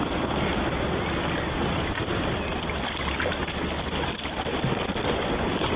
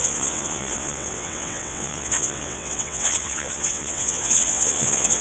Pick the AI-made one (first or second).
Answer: second